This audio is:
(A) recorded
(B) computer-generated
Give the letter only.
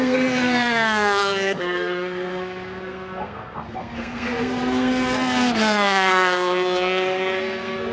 B